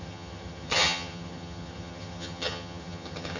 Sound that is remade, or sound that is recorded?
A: remade